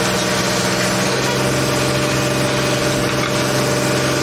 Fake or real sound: real